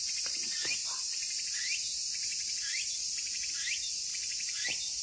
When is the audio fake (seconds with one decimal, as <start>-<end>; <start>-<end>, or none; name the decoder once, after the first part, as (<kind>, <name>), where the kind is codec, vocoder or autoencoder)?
none